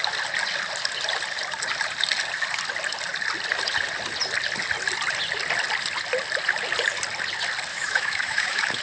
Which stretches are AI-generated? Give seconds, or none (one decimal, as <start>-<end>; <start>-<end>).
7.7-8.8